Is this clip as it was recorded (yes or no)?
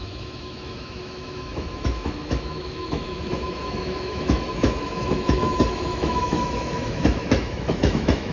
no